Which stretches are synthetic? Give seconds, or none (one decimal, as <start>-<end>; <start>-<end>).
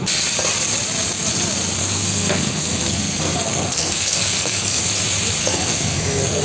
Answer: 1.8-4.8; 5.4-6.4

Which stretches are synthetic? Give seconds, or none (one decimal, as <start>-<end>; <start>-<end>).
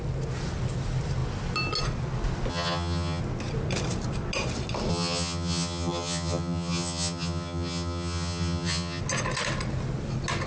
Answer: 2.5-3.2; 4.9-9.0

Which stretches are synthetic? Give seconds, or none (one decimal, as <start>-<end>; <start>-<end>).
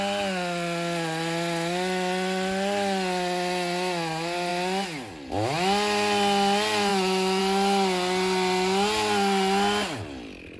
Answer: 6.9-7.4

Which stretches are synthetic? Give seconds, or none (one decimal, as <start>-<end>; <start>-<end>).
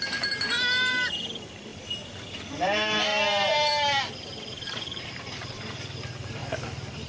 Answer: 0.0-1.7; 2.5-3.1; 4.0-6.4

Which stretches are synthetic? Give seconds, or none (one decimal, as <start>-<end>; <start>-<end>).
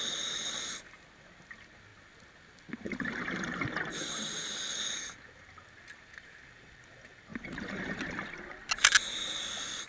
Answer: none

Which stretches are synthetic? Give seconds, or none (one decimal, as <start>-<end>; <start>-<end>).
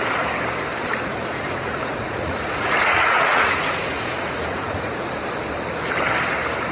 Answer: 1.1-5.1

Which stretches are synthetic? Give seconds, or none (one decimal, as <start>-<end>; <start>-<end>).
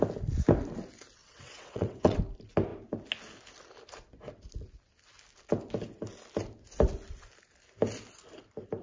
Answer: 1.2-2.2